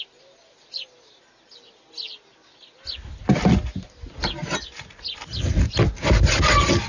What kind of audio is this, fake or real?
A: real